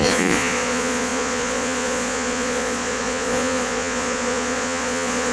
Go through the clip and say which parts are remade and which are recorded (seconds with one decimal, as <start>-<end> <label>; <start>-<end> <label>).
0.0-5.3 remade